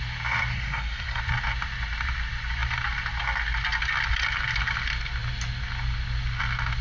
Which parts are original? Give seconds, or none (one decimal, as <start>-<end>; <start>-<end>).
0.0-0.5; 1.2-6.8